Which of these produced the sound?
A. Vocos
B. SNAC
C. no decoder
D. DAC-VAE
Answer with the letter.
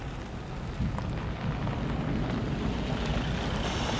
C